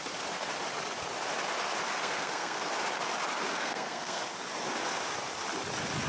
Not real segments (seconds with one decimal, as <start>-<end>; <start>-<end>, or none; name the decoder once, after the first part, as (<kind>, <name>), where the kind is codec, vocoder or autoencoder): 2.0-2.6 (codec, SNAC); 3.5-4.2